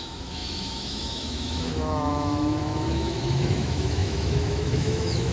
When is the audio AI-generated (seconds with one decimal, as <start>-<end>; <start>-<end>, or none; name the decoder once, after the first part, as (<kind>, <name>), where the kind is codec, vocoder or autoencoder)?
0.0-5.3 (autoencoder, DAC-VAE)